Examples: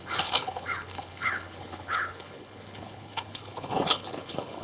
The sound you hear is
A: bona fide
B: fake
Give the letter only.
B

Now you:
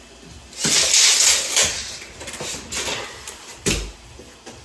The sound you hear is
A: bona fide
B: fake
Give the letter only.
A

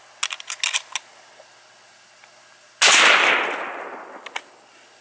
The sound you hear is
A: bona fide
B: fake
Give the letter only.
A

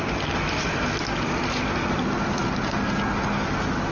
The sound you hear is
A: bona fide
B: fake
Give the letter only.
A